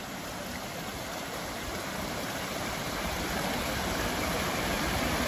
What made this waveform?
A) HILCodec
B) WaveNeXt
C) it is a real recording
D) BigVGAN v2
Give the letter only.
D